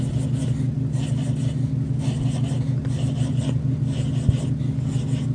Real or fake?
real